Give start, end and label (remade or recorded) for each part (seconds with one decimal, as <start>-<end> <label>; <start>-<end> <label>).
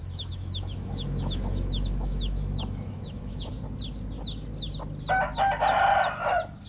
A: 0.0-3.5 remade; 3.5-6.7 recorded